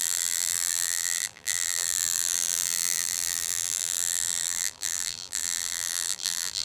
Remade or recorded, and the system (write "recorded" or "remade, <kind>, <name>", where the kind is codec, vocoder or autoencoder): remade, vocoder, BigVGAN v2